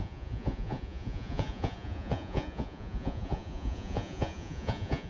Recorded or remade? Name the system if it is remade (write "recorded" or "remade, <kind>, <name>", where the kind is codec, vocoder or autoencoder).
remade, vocoder, Vocos